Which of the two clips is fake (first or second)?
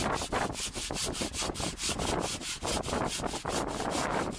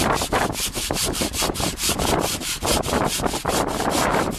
second